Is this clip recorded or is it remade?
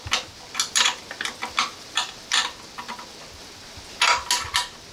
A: recorded